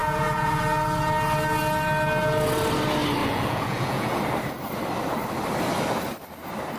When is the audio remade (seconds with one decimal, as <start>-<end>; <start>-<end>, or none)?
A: 0.0-0.6; 3.2-4.2